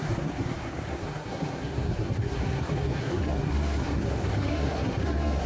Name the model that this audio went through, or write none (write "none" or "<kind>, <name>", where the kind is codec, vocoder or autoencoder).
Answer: codec, SNAC